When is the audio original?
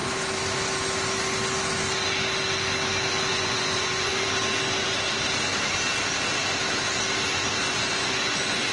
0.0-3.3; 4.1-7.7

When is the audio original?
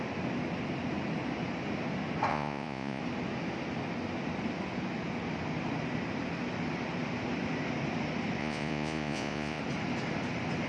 0.0-2.3; 3.0-8.4; 9.6-10.7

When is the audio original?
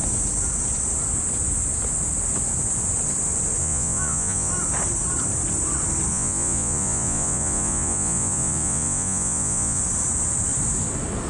0.0-3.6; 4.5-6.1; 9.8-11.3